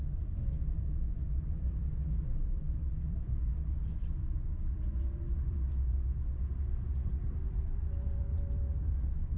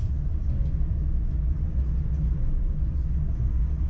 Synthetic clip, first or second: first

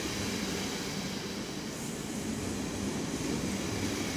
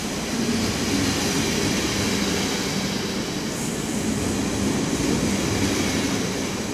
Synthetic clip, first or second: first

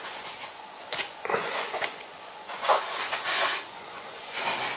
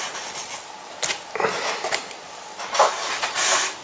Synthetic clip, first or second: first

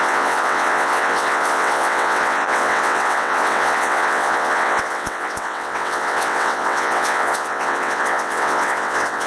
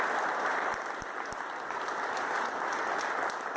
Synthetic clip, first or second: first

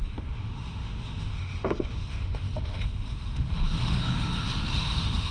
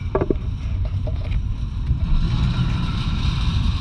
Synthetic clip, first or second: first